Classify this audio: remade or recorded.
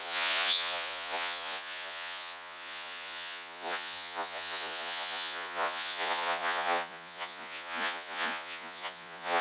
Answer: remade